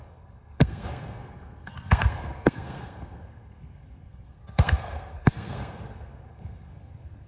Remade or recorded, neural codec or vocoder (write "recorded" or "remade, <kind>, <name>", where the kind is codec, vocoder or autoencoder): remade, codec, SNAC